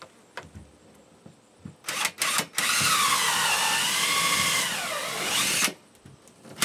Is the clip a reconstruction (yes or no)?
no